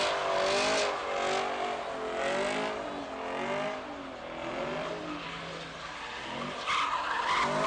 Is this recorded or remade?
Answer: recorded